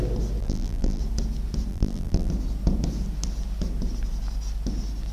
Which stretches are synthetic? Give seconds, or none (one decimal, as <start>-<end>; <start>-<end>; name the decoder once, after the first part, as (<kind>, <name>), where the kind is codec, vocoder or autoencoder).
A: 0.4-1.0 (vocoder, BigVGAN v2); 1.7-2.3